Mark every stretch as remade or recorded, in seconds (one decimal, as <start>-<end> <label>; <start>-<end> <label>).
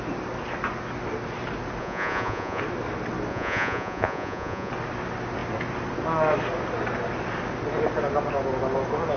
0.0-1.8 recorded; 1.8-2.6 remade; 2.6-3.3 recorded; 3.3-4.7 remade; 4.7-9.2 recorded